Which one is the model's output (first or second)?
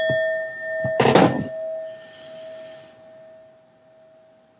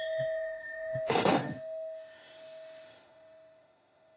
second